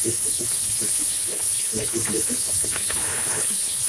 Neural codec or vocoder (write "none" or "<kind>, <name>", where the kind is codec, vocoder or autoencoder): codec, HILCodec